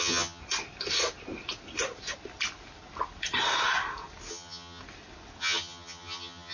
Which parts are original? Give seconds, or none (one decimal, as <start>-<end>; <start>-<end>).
0.4-4.3; 4.8-5.4